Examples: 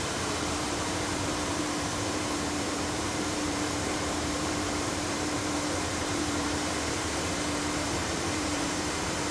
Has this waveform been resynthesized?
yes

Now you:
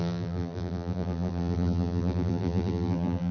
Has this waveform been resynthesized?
yes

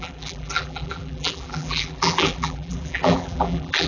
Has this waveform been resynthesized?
yes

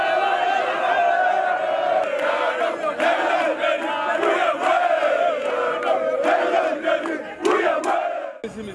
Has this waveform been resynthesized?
no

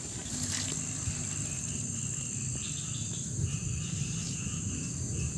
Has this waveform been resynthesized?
no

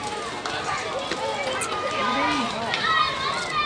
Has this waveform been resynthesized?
no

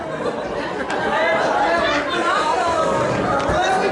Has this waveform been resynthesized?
no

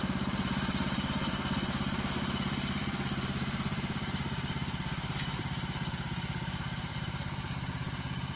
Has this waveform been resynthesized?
yes